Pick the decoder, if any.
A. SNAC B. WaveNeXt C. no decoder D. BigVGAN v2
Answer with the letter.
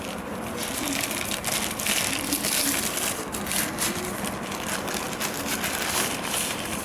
C